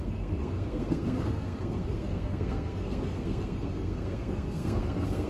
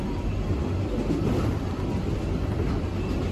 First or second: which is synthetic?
first